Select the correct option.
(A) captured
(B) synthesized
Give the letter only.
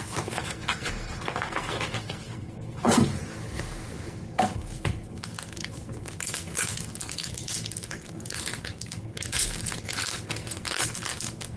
B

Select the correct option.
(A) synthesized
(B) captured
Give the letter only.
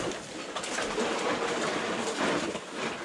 B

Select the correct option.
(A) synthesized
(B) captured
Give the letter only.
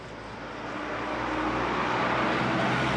B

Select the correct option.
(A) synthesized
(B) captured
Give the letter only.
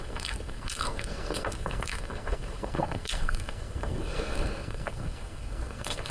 A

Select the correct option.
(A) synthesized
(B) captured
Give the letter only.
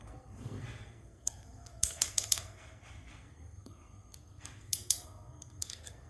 A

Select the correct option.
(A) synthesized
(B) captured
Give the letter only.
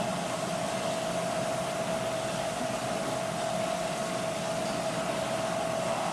B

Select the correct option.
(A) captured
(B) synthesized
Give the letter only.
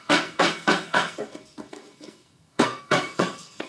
B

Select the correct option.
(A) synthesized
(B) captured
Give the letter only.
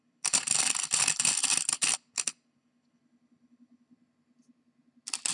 B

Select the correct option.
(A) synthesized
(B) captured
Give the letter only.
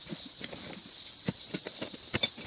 B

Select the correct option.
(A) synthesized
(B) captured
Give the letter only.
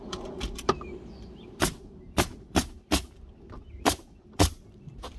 B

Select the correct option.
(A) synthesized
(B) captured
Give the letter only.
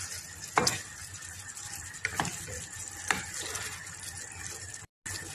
B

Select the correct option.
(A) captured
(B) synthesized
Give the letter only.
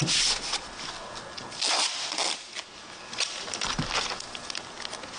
A